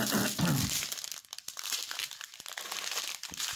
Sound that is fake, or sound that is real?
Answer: real